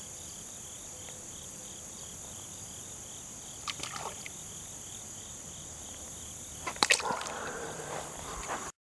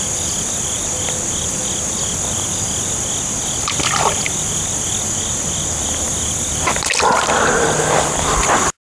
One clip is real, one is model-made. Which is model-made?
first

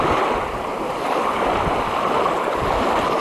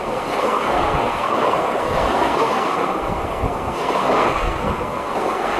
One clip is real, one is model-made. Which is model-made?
second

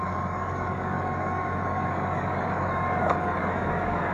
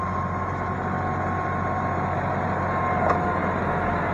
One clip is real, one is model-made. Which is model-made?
first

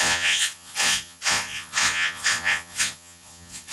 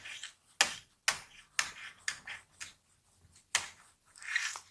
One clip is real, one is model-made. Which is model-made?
first